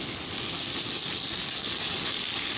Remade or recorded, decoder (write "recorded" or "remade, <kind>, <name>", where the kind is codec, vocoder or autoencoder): recorded